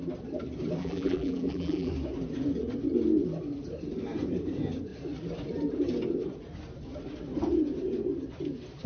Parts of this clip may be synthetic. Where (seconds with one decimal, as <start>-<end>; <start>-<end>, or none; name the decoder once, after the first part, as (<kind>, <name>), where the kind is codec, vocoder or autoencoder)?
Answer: 0.8-1.9 (vocoder, BigVGAN v2)

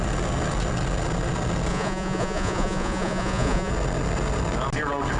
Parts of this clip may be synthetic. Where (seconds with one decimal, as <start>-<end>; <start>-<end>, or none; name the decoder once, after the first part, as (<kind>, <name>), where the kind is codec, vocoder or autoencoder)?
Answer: 1.7-3.7 (vocoder, Vocos)

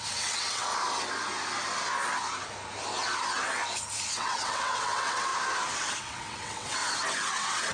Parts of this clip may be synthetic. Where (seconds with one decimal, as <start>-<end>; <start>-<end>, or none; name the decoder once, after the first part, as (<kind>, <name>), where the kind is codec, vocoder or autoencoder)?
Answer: 0.0-0.7 (vocoder, WaveNeXt); 4.1-5.3; 6.0-6.8; 7.3-7.7

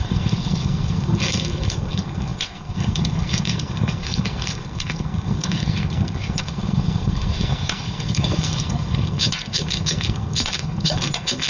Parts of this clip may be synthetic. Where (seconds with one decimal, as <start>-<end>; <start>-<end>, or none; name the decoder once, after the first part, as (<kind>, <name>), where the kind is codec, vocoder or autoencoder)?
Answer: 0.0-11.5 (codec, SNAC)

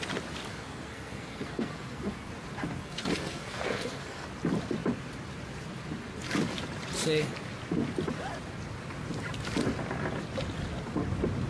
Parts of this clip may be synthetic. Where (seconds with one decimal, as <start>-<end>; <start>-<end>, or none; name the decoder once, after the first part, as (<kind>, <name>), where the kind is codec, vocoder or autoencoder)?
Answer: 0.5-2.3 (codec, SNAC); 2.8-4.3

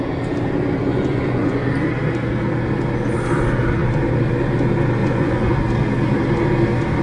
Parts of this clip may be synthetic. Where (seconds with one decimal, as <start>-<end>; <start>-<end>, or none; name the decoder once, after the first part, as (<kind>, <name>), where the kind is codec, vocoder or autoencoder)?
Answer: 0.9-1.6 (vocoder, Vocos); 5.0-5.5

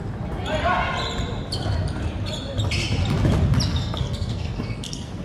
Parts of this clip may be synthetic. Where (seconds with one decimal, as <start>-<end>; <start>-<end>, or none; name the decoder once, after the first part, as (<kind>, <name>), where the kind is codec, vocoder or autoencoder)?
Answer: 3.7-5.2 (codec, SNAC)